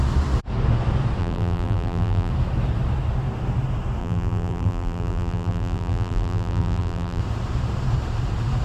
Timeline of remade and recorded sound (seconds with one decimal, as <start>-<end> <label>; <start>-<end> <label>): 0.0-1.2 recorded; 1.2-2.3 remade; 2.3-4.0 recorded; 4.0-7.2 remade; 7.2-8.6 recorded